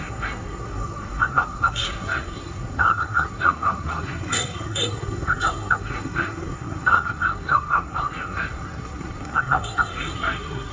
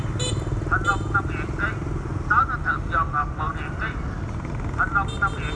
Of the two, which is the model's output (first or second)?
first